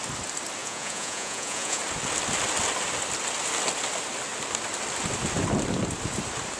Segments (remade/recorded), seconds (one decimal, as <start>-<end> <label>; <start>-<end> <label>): 0.0-0.6 recorded; 0.6-1.8 remade; 1.8-6.6 recorded